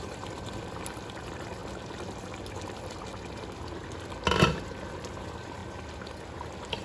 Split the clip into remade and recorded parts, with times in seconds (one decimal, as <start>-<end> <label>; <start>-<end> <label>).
0.0-1.6 remade; 1.6-2.6 recorded; 2.6-3.1 remade; 3.1-4.8 recorded; 4.8-5.6 remade; 5.6-6.2 recorded; 6.2-6.8 remade